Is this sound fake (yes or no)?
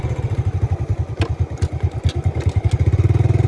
no